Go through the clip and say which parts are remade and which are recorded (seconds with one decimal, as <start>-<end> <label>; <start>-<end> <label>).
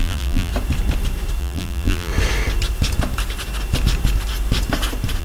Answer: 0.0-0.5 remade; 0.5-1.4 recorded; 1.4-2.1 remade; 2.1-5.2 recorded